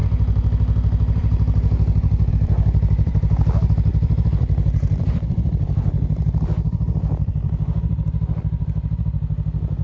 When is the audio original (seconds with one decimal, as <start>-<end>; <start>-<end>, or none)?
none